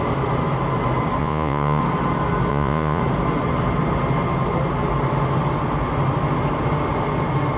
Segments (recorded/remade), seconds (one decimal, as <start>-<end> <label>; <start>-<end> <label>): 0.0-1.2 recorded; 1.2-1.8 remade; 1.8-2.5 recorded; 2.5-3.0 remade; 3.0-7.6 recorded